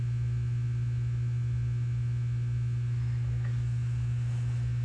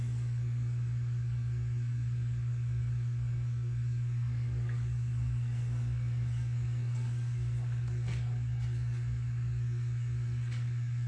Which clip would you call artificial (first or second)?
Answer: second